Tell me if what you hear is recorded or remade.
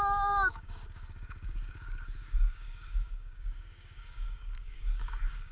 remade